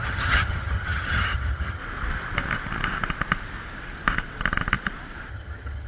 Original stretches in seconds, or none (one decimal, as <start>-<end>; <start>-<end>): 1.8-5.3